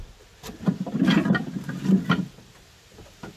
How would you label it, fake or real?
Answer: real